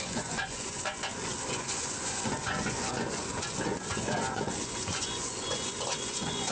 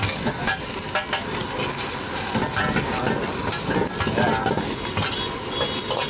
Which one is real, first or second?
second